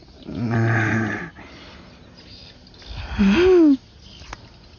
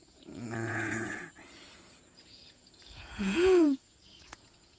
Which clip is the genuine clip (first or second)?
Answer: first